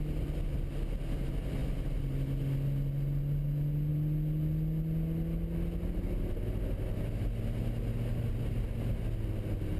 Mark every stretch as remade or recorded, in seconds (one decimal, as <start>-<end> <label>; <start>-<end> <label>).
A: 0.0-9.8 recorded